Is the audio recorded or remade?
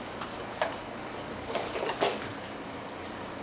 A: remade